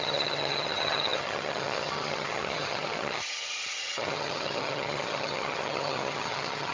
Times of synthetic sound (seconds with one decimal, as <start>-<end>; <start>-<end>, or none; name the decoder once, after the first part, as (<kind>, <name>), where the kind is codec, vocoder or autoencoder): 0.0-6.7 (vocoder, HiFi-GAN)

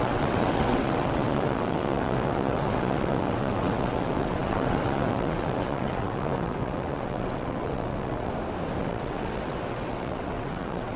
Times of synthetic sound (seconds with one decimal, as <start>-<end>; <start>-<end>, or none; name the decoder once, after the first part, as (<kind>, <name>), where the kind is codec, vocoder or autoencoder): 0.0-8.3 (vocoder, WaveNeXt); 8.8-11.0

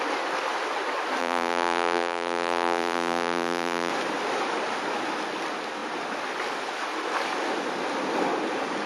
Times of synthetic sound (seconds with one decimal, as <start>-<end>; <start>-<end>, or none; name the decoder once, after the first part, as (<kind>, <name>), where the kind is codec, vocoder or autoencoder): 1.2-3.9 (vocoder, BigVGAN v2)

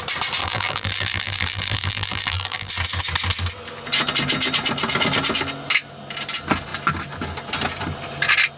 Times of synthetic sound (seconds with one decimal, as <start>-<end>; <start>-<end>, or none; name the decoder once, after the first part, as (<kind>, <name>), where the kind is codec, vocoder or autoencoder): 0.4-2.7 (vocoder, BigVGAN v2)

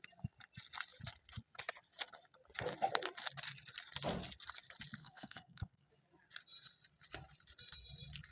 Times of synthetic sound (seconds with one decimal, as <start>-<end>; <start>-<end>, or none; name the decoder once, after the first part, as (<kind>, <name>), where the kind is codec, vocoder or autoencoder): 5.0-5.9 (codec, SNAC)

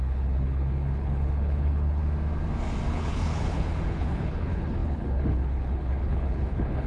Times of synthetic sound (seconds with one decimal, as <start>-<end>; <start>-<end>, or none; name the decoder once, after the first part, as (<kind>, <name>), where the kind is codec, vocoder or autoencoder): 0.0-2.0 (codec, HILCodec); 2.9-6.9

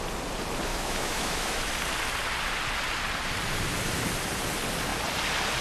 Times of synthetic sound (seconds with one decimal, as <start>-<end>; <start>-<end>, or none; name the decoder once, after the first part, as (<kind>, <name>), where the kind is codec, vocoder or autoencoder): 0.7-1.7 (autoencoder, DAC-VAE)

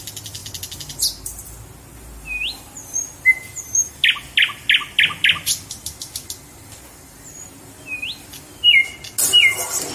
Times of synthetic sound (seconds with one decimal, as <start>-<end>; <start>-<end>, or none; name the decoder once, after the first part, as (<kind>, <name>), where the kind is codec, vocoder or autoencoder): none